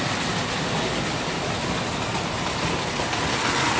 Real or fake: real